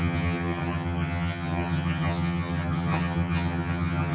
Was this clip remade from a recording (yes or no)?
yes